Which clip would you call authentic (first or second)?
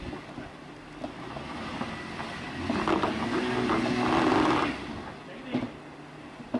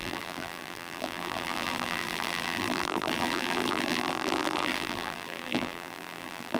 first